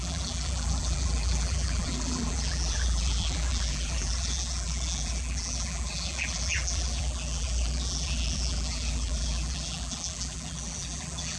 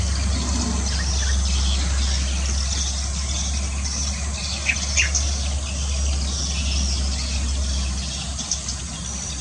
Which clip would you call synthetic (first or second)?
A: first